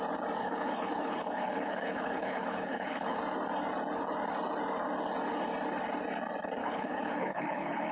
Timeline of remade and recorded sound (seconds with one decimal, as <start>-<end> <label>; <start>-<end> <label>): 0.0-0.4 recorded; 0.4-3.2 remade; 3.2-6.6 recorded; 6.6-7.9 remade

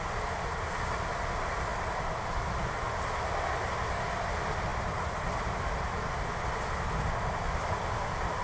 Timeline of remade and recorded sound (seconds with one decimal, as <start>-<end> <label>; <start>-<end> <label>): 0.0-8.4 recorded

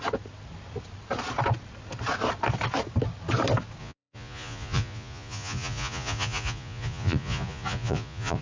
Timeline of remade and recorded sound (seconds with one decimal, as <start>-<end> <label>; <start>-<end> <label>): 0.0-3.8 recorded; 3.8-8.4 remade

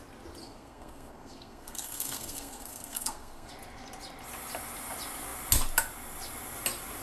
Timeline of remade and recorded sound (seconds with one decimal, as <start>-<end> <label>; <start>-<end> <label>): 0.0-0.4 recorded; 0.4-3.5 remade; 3.5-7.0 recorded

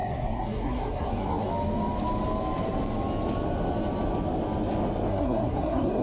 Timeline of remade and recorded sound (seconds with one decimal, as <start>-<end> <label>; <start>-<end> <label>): 0.0-1.5 remade; 1.5-5.1 recorded; 5.1-6.0 remade